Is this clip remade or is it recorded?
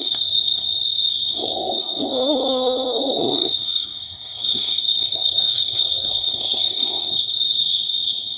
remade